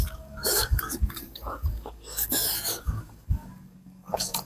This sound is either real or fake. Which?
fake